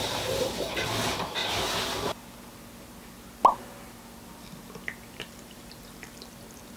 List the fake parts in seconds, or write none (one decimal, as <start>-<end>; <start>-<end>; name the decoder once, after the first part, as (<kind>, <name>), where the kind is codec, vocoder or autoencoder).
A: 0.0-1.4 (vocoder, BigVGAN v2); 5.1-6.8